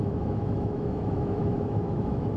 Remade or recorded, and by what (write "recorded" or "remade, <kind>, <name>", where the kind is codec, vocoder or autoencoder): remade, autoencoder, DAC-VAE